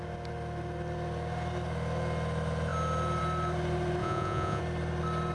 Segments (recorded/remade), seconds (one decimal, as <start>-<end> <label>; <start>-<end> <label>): 0.0-4.0 recorded; 4.0-4.6 remade; 4.6-5.3 recorded